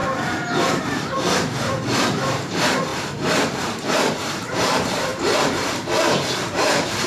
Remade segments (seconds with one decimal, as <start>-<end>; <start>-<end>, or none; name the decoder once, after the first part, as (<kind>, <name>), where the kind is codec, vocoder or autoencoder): 0.8-7.1 (vocoder, BigVGAN v2)